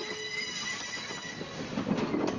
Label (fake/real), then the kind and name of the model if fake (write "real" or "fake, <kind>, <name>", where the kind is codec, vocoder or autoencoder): real